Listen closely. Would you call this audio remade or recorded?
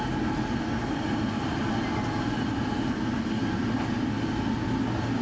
recorded